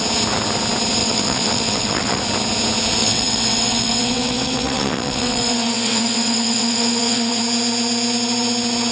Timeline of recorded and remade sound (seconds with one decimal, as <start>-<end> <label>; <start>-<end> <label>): 0.0-1.0 recorded; 1.0-2.2 remade; 2.2-3.0 recorded; 3.0-7.4 remade; 7.4-8.9 recorded